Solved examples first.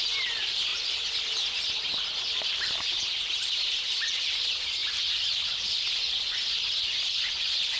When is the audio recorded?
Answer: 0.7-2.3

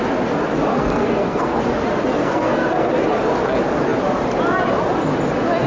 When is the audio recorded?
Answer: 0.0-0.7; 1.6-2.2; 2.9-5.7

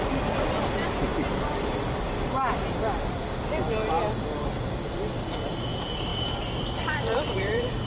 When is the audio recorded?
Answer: 0.0-6.1

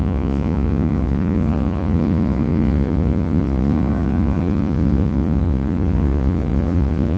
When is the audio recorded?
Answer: none

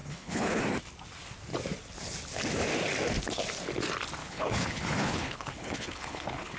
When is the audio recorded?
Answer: 0.6-4.2